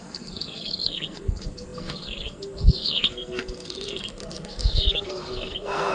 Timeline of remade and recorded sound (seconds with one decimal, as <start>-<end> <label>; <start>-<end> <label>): 0.0-5.9 remade